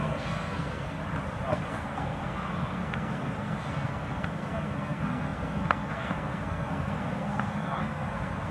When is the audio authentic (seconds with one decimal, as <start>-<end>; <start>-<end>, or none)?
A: 1.0-1.5